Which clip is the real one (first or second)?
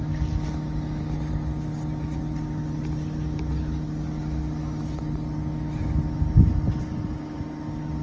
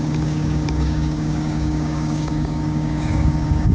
first